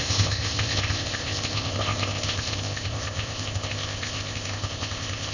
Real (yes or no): no